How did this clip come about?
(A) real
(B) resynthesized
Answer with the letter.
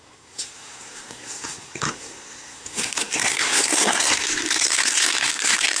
B